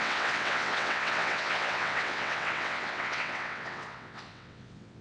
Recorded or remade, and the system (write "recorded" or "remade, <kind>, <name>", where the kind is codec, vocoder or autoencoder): remade, vocoder, WaveNeXt